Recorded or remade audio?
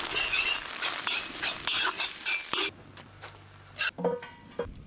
recorded